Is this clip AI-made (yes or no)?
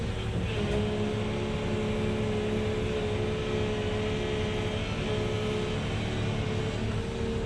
no